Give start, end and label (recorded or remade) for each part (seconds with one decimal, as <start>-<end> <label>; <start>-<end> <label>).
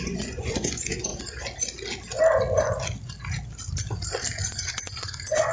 0.0-1.1 remade; 1.1-4.4 recorded; 4.4-5.5 remade